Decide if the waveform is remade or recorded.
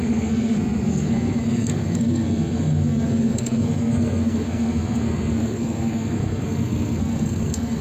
remade